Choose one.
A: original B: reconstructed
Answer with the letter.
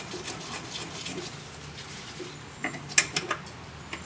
A